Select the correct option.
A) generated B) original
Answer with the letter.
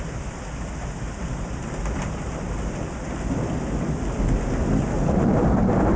B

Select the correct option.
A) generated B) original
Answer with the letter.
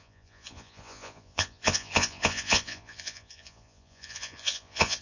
A